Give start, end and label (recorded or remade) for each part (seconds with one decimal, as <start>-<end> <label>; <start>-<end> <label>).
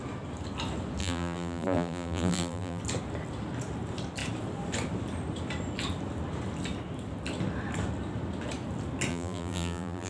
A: 0.0-1.0 recorded; 1.0-2.8 remade; 2.8-9.1 recorded; 9.1-10.1 remade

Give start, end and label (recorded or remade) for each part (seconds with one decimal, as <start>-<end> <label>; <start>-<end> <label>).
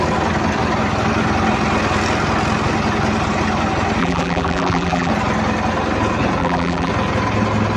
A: 0.0-4.0 recorded; 4.0-5.1 remade; 5.1-6.4 recorded; 6.4-6.9 remade; 6.9-7.8 recorded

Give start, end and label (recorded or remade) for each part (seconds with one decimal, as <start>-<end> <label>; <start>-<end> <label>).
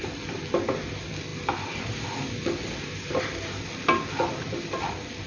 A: 0.0-5.3 recorded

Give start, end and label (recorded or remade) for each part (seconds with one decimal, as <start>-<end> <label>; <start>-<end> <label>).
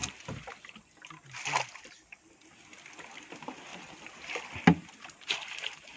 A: 0.0-2.3 remade; 2.3-3.7 recorded; 3.7-4.6 remade; 4.6-6.0 recorded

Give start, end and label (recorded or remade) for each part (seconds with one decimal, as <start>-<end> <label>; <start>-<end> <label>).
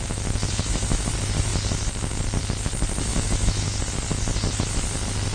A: 0.0-1.1 remade; 1.1-3.1 recorded; 3.1-3.8 remade; 3.8-5.3 recorded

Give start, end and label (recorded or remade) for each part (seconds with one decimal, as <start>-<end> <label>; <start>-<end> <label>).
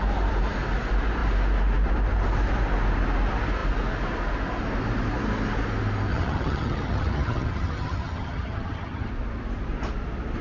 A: 0.0-6.1 recorded; 6.1-9.1 remade; 9.1-10.4 recorded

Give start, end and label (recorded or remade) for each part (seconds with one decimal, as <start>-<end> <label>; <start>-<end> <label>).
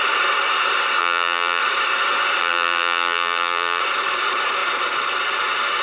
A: 0.0-1.0 recorded; 1.0-1.6 remade; 1.6-2.4 recorded; 2.4-3.8 remade; 3.8-5.8 recorded